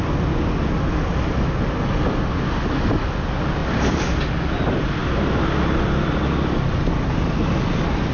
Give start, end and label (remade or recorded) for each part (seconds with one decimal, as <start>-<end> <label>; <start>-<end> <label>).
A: 0.0-3.6 recorded; 3.6-4.2 remade; 4.2-8.1 recorded